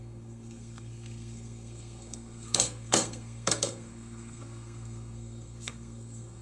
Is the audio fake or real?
fake